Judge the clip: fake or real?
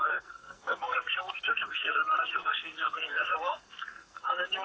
fake